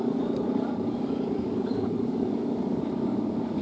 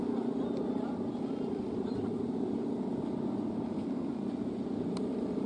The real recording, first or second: second